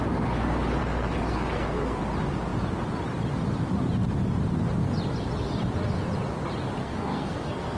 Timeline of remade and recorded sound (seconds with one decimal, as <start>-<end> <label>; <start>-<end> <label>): 0.0-0.8 recorded; 0.8-2.0 remade; 2.0-6.8 recorded; 6.8-7.8 remade